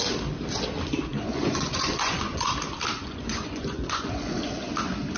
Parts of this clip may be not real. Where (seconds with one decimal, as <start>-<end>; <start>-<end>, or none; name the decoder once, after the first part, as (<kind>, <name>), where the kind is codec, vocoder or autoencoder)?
1.1-2.5 (vocoder, Vocos); 3.0-4.7